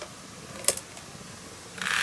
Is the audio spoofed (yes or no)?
no